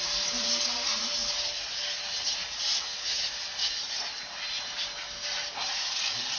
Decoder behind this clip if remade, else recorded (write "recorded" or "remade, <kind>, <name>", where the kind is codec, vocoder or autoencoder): recorded